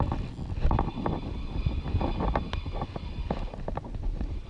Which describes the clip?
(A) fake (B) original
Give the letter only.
B